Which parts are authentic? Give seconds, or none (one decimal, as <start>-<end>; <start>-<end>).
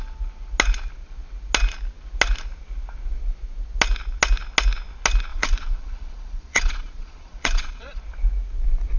0.0-5.3; 8.0-9.0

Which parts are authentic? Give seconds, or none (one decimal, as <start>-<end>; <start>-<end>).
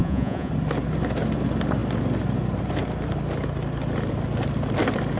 0.5-5.2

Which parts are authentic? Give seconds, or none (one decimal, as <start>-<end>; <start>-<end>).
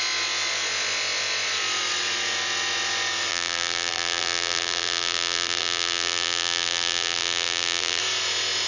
0.0-3.3; 8.0-8.7